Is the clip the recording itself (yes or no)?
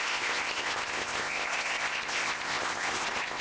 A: no